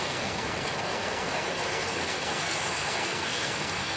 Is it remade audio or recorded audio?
remade